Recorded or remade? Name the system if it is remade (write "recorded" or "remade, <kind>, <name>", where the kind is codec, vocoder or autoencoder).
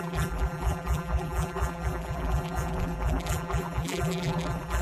remade, vocoder, BigVGAN v2